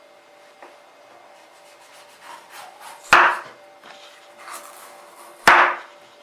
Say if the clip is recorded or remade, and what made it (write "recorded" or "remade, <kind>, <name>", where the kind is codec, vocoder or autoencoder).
recorded